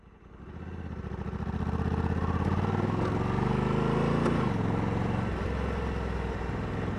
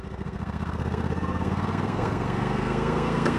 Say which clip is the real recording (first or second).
first